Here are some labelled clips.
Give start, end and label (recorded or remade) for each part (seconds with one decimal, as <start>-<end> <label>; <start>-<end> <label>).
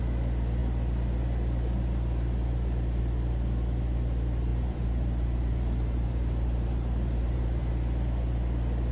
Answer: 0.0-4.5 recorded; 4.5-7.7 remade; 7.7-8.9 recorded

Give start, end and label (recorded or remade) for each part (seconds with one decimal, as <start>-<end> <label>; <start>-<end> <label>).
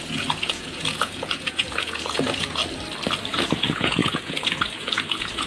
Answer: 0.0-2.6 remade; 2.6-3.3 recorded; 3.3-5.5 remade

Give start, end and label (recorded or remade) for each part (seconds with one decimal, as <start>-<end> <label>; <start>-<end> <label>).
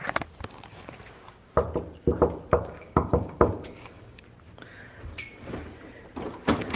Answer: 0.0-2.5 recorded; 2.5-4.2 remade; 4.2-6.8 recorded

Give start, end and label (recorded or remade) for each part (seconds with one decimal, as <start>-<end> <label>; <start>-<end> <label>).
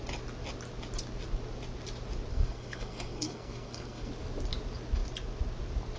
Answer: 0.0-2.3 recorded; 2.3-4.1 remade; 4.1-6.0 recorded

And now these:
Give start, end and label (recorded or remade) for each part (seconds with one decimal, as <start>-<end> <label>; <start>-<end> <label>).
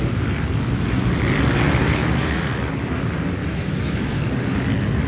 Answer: 0.0-1.8 recorded; 1.8-2.5 remade; 2.5-3.4 recorded; 3.4-4.2 remade; 4.2-5.1 recorded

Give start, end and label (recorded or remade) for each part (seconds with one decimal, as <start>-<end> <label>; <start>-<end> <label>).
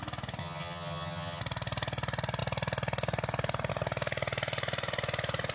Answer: 0.0-0.4 recorded; 0.4-1.4 remade; 1.4-5.5 recorded